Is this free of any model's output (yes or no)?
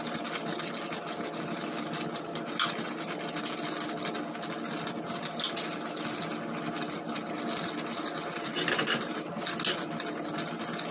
yes